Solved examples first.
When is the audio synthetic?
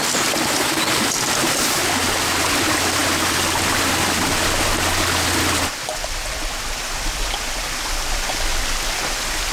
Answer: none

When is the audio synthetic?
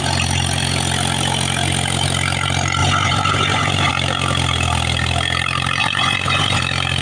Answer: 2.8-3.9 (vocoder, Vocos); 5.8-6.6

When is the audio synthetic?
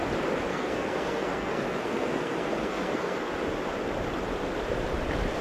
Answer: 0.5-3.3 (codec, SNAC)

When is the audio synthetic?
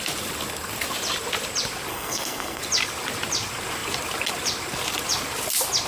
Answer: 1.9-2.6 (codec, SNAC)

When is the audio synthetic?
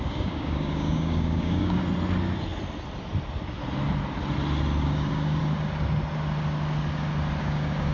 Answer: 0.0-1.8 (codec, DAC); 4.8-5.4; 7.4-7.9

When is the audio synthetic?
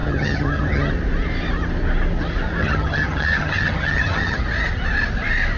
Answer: 0.0-0.9 (vocoder, HiFi-GAN); 2.6-4.4